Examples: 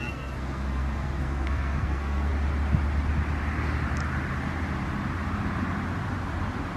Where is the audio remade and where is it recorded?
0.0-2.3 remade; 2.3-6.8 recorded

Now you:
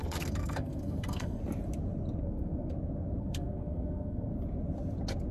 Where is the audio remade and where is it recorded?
0.0-1.4 remade; 1.4-2.2 recorded; 2.2-2.7 remade; 2.7-3.2 recorded; 3.2-4.3 remade; 4.3-5.3 recorded

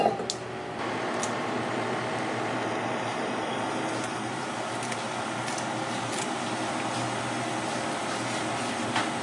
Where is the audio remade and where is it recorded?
0.0-9.2 recorded

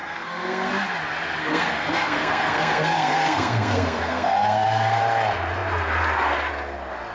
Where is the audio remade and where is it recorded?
0.0-0.7 remade; 0.7-1.4 recorded; 1.4-5.0 remade; 5.0-7.1 recorded

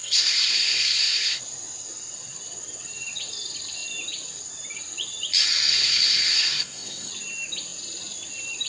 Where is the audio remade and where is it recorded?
0.0-1.4 remade; 1.4-5.7 recorded; 5.7-7.1 remade; 7.1-8.7 recorded

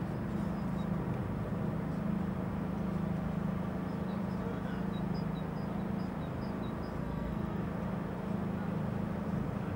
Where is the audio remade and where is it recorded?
0.0-7.0 recorded; 7.0-7.6 remade; 7.6-9.8 recorded

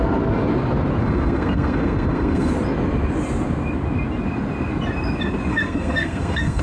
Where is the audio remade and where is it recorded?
0.0-1.0 recorded; 1.0-2.5 remade; 2.5-5.5 recorded; 5.5-6.6 remade